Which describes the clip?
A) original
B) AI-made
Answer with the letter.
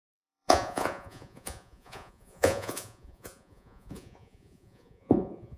B